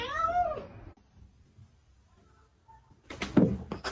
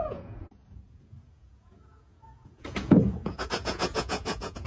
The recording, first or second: first